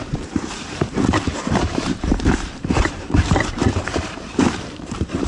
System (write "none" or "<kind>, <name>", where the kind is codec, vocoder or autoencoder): vocoder, BigVGAN v2